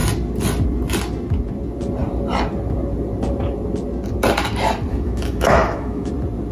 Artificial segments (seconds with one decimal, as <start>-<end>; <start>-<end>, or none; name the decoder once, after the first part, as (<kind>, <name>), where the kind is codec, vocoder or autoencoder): 4.9-6.1 (autoencoder, DAC-VAE)